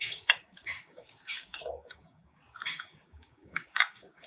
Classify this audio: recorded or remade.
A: remade